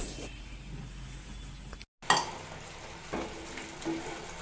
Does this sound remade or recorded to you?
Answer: recorded